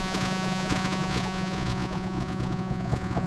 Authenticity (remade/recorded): remade